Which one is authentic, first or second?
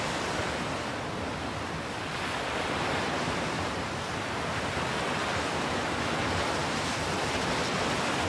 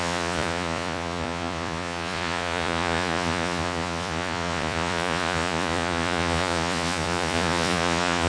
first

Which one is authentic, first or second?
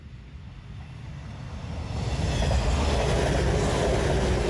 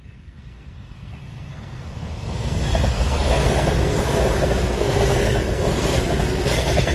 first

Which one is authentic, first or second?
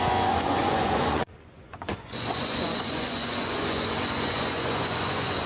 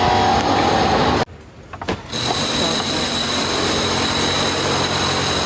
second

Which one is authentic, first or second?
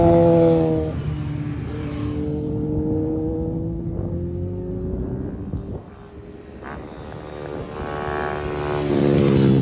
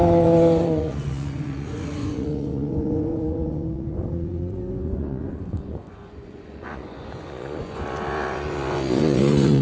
first